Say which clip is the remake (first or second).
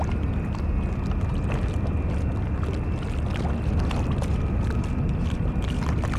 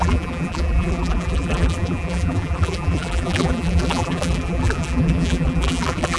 second